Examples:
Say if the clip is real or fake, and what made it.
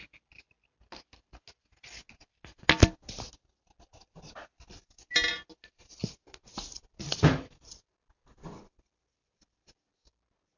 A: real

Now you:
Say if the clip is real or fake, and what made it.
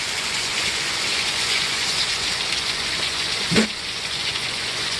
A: fake, vocoder, Vocos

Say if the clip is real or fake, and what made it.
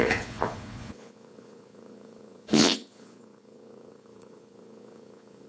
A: fake, vocoder, Vocos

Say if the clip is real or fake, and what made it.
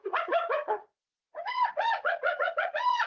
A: fake, vocoder, Vocos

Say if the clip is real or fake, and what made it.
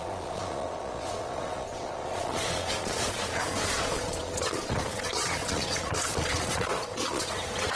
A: fake, vocoder, Vocos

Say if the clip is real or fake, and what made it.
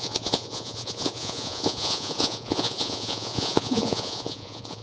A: fake, vocoder, Vocos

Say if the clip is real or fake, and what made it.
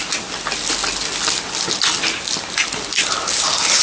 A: real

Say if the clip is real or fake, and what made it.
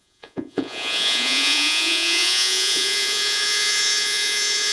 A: fake, vocoder, Vocos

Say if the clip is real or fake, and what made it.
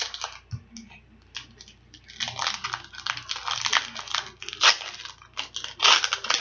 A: real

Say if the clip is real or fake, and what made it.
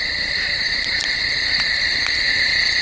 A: real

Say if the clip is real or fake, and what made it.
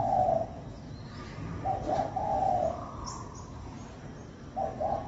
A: real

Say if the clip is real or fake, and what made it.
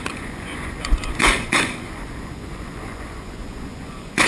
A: fake, vocoder, Vocos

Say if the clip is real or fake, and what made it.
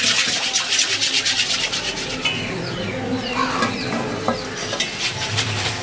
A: real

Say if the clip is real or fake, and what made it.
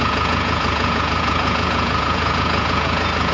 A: fake, vocoder, Vocos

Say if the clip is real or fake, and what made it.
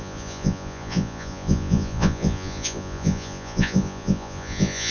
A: fake, vocoder, Vocos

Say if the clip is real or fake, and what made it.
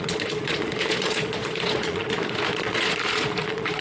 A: fake, vocoder, Vocos